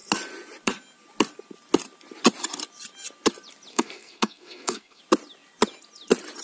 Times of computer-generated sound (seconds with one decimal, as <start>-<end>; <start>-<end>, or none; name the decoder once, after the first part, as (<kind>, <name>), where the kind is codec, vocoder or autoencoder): 3.7-5.0 (codec, SNAC)